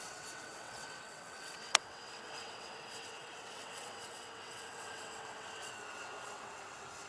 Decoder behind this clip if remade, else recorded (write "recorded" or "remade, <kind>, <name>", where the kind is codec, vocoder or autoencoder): remade, vocoder, WaveNeXt